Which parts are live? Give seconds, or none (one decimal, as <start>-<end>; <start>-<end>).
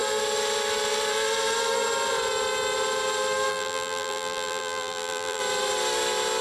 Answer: 0.0-3.5; 5.4-6.4